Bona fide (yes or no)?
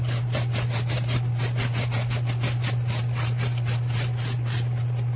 yes